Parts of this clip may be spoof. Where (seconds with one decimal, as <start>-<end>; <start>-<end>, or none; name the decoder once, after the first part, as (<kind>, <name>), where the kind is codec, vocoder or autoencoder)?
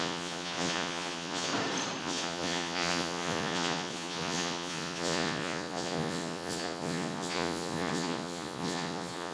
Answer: 0.0-1.5 (vocoder, Vocos); 2.0-9.3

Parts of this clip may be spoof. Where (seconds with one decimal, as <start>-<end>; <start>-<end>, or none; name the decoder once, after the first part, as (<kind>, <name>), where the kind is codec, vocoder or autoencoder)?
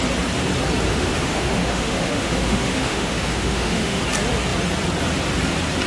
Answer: 0.9-4.0 (autoencoder, DAC-VAE)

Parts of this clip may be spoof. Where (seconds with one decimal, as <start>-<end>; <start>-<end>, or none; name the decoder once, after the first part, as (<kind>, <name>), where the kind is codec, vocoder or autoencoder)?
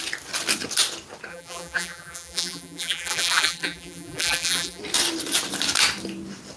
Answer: 1.3-4.8 (vocoder, BigVGAN v2)